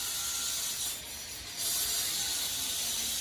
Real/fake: real